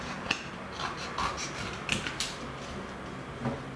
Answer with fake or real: real